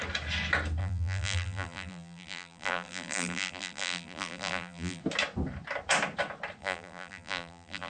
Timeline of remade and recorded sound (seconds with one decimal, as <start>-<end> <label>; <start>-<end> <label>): 0.0-0.8 recorded; 0.8-5.0 remade; 5.0-6.6 recorded; 6.6-7.9 remade